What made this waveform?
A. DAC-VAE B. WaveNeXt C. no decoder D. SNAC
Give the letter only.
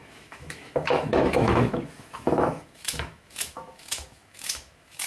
A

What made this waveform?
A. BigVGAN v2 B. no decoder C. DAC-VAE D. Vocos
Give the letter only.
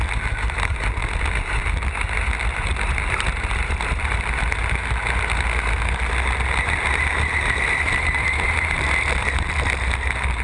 B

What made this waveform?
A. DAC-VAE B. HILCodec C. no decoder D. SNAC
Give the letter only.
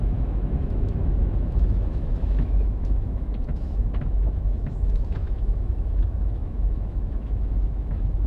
A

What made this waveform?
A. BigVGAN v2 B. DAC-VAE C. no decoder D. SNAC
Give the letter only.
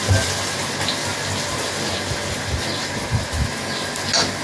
C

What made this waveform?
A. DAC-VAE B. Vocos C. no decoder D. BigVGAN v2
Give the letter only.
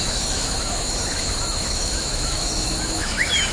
A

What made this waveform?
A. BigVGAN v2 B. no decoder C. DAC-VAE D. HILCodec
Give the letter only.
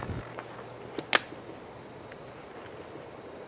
B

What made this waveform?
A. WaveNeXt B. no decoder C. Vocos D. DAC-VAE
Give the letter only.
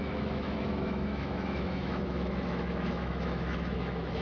D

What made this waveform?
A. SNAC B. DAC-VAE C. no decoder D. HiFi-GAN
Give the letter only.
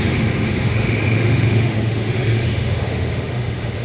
B